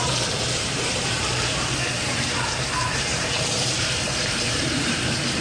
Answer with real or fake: fake